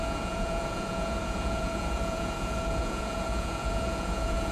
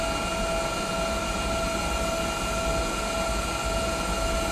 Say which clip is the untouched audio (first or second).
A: second